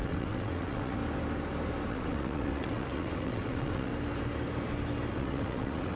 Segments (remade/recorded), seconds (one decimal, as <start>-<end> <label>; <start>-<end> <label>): 0.0-1.0 remade; 1.0-1.9 recorded; 1.9-3.9 remade; 3.9-5.1 recorded; 5.1-6.0 remade